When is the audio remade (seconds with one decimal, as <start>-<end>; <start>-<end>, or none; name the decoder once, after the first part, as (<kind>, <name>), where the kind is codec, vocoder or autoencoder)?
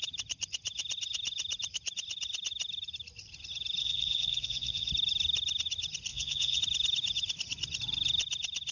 3.8-4.9 (vocoder, Vocos); 6.1-6.6